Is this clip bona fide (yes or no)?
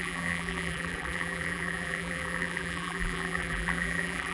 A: no